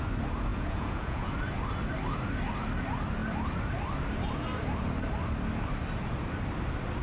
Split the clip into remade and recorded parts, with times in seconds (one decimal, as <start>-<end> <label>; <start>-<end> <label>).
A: 0.0-0.5 recorded; 0.5-1.3 remade; 1.3-7.0 recorded